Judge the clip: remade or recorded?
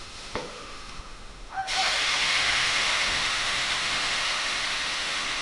remade